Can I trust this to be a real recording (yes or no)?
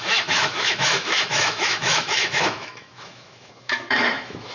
no